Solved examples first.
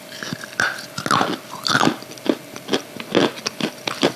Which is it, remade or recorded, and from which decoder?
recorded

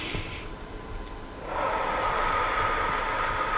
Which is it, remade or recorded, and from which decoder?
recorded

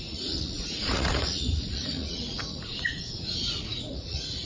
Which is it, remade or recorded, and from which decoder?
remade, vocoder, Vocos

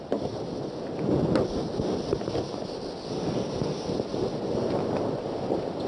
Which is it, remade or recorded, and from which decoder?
recorded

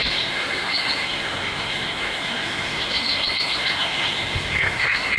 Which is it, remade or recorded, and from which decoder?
remade, codec, SNAC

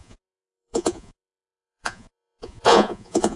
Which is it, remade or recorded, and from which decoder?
remade, vocoder, Vocos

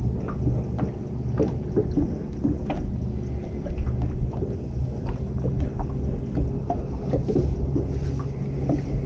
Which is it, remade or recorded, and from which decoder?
recorded